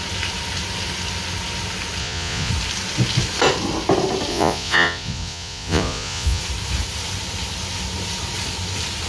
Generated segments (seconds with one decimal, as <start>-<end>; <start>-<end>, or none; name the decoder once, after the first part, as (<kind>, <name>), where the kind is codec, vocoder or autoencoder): 2.0-2.5 (vocoder, Vocos); 4.3-6.4